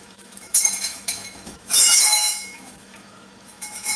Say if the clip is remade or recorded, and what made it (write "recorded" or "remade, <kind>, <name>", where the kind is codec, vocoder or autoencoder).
remade, autoencoder, DAC-VAE